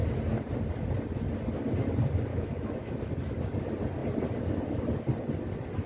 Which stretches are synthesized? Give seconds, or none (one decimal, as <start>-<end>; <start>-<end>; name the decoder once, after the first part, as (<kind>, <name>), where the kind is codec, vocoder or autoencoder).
2.3-2.9 (autoencoder, DAC-VAE)